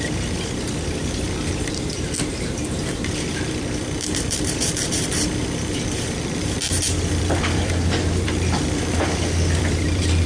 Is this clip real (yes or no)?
no